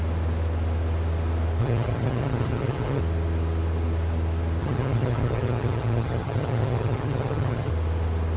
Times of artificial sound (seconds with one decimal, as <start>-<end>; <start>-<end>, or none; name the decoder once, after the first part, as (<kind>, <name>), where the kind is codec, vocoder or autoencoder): 1.6-3.0 (vocoder, HiFi-GAN); 4.6-7.7